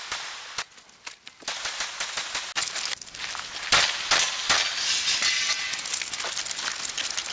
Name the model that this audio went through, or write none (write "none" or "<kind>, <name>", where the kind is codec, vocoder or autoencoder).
none